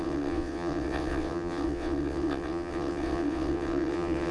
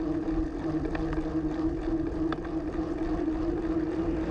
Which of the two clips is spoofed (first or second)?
first